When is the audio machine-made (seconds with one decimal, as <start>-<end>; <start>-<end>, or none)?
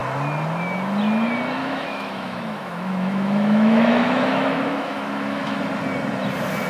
1.6-5.6